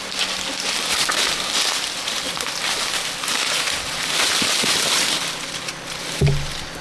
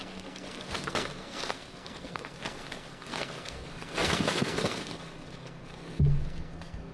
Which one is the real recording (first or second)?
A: first